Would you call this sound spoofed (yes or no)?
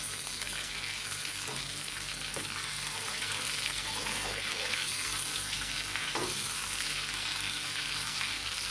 yes